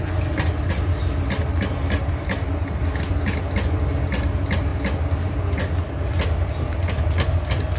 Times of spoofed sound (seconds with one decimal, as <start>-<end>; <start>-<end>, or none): none